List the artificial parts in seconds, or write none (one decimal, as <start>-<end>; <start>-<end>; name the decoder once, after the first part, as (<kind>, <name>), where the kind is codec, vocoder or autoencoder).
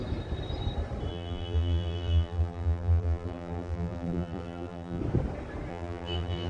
1.1-5.0 (vocoder, BigVGAN v2); 5.7-6.5